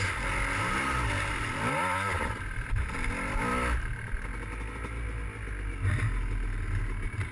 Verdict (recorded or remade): recorded